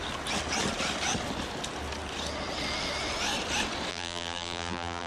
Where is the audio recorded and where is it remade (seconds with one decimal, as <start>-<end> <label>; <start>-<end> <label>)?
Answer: 0.0-3.9 recorded; 3.9-5.1 remade